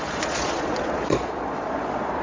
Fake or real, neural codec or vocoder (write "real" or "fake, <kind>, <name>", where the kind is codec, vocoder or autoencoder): fake, vocoder, Vocos